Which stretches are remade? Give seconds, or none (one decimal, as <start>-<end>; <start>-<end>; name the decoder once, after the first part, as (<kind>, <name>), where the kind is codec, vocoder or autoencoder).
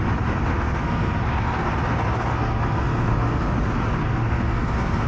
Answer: 0.5-1.7 (codec, SNAC); 2.3-3.6; 4.0-5.1